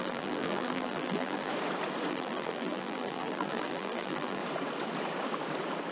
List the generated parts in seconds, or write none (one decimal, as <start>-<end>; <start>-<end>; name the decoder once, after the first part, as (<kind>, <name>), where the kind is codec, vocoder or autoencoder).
0.0-1.5 (vocoder, BigVGAN v2); 2.1-4.4